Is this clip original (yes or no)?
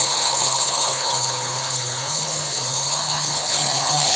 no